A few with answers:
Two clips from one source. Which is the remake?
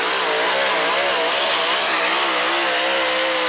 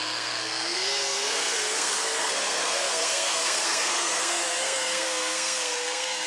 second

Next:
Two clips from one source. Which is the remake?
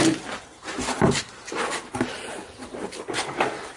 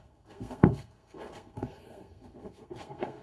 second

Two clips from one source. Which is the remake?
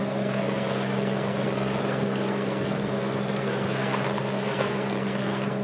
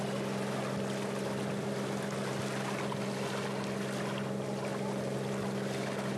first